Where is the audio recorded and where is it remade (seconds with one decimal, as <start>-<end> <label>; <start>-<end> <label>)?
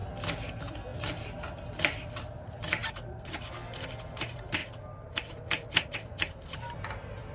0.0-0.5 recorded; 0.5-2.8 remade; 2.8-3.9 recorded; 3.9-4.6 remade; 4.6-5.3 recorded; 5.3-7.3 remade